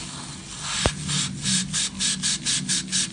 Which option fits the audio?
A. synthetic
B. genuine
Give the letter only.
B